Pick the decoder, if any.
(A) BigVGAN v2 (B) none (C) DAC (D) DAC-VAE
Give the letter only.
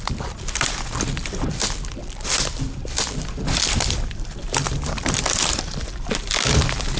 A